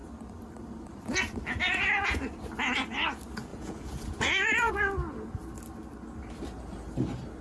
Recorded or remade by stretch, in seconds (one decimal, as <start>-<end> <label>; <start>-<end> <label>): 0.0-3.5 recorded; 3.5-4.7 remade; 4.7-7.4 recorded